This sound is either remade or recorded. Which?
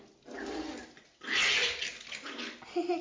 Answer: recorded